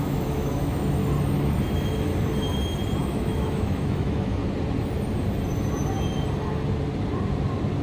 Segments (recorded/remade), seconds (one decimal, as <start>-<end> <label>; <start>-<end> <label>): 0.0-1.0 remade; 1.0-1.6 recorded; 1.6-2.1 remade; 2.1-3.0 recorded; 3.0-4.4 remade; 4.4-7.8 recorded